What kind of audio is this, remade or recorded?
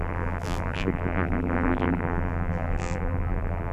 remade